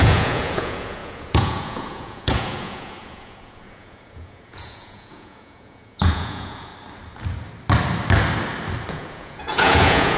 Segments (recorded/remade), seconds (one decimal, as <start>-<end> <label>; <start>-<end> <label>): 0.0-6.7 remade; 6.7-8.9 recorded; 8.9-10.2 remade